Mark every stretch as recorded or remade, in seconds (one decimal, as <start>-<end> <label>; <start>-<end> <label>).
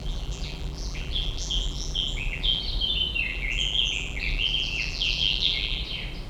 0.0-2.6 remade; 2.6-3.3 recorded; 3.3-5.8 remade; 5.8-6.3 recorded